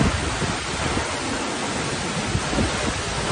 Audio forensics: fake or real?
real